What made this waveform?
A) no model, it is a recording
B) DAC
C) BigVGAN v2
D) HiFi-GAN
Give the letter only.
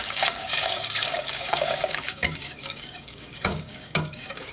B